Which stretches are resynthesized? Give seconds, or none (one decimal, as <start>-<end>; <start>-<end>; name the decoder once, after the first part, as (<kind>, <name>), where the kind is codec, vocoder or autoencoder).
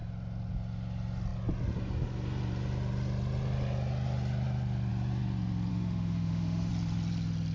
5.7-6.7 (autoencoder, DAC-VAE)